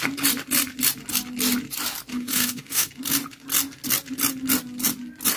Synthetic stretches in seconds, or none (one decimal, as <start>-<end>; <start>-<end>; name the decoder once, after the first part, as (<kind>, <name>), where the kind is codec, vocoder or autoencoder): 2.1-2.9 (autoencoder, DAC-VAE)